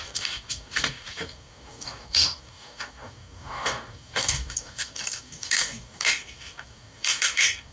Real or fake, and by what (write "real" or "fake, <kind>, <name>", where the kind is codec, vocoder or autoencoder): fake, codec, DAC